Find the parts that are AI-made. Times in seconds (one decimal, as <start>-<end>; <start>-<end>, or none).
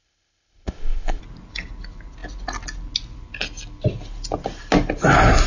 0.0-1.2